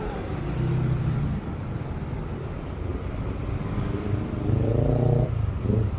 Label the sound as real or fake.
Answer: real